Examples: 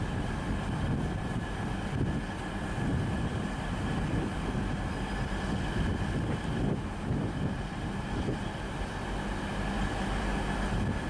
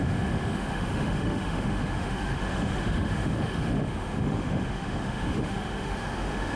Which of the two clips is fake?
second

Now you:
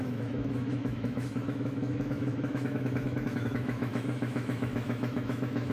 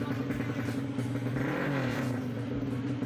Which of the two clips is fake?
first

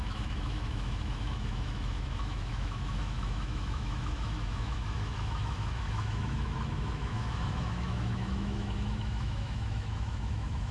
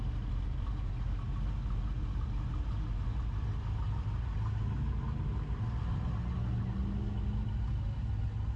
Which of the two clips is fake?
first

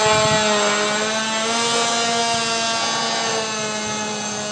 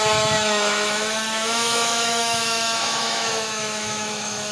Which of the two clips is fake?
second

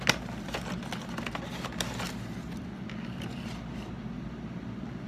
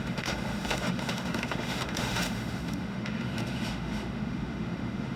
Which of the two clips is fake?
second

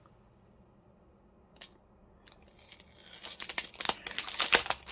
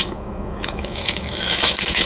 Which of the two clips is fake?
second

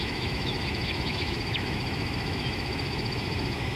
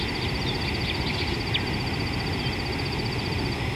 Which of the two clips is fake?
first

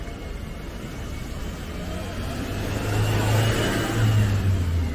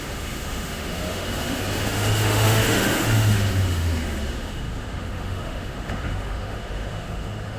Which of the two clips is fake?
second